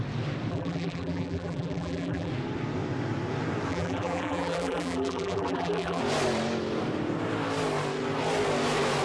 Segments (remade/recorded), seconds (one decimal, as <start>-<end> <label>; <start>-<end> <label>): 0.0-0.5 recorded; 0.5-2.3 remade; 2.3-3.7 recorded; 3.7-6.0 remade; 6.0-9.0 recorded